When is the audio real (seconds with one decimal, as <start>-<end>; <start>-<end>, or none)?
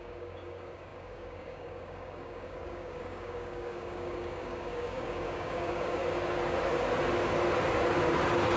6.0-8.6